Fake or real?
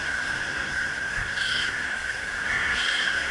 fake